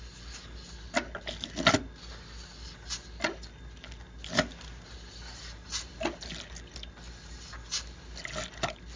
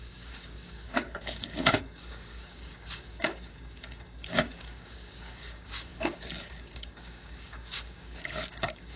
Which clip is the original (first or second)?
first